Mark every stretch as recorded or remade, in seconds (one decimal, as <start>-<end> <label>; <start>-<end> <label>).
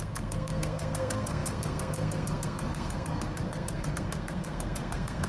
0.0-5.3 remade